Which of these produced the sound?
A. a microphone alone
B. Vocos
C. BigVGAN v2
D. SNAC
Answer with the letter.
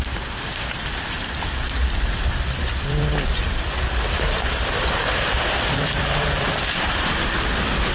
C